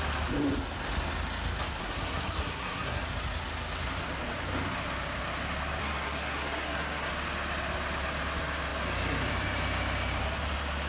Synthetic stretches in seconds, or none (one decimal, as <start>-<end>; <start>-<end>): 1.8-3.0; 5.8-7.1